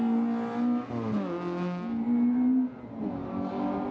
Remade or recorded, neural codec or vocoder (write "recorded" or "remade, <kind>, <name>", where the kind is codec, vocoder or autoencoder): recorded